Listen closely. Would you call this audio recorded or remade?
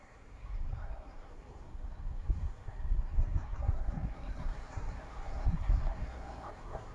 remade